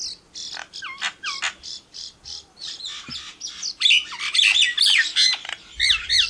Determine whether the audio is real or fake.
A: real